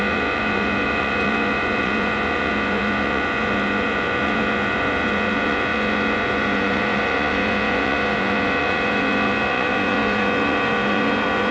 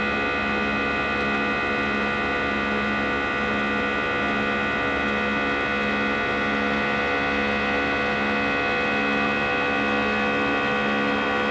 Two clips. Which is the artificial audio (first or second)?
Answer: first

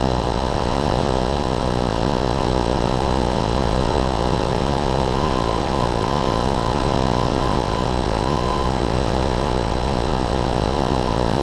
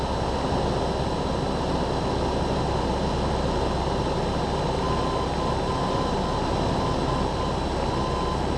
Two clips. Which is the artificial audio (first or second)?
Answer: first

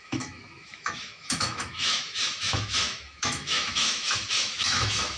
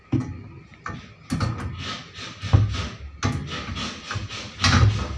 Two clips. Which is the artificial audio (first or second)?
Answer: first